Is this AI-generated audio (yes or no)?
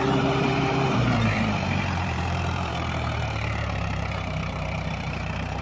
yes